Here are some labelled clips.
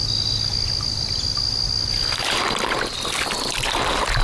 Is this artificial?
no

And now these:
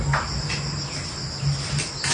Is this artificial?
no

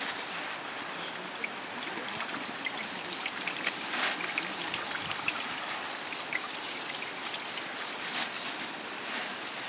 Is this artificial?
yes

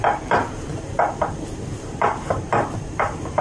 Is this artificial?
yes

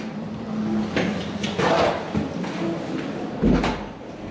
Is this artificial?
no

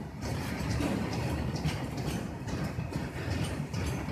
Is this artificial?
yes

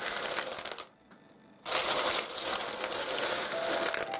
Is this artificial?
no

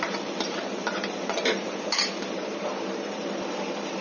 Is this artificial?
yes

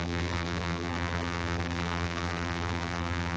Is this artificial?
yes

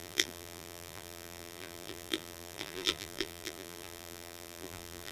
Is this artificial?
yes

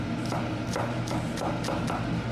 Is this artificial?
no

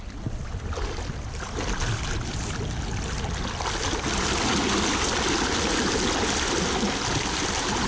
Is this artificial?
no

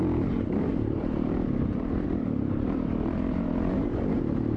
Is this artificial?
yes